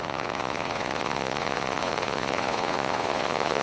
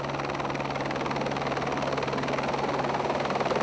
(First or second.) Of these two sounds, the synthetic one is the first